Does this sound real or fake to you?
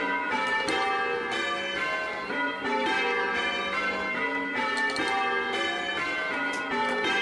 real